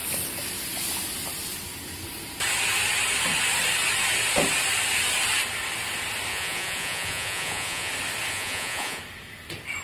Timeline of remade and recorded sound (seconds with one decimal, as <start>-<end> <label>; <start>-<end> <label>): 0.0-6.3 recorded; 6.3-7.9 remade; 7.9-8.3 recorded; 8.3-9.0 remade; 9.0-9.8 recorded